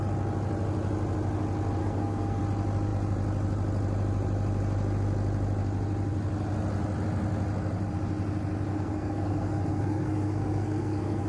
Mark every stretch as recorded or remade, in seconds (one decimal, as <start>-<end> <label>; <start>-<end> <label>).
0.0-1.8 recorded; 1.8-2.4 remade; 2.4-8.7 recorded; 8.7-11.3 remade